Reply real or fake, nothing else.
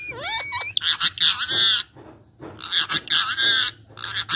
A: real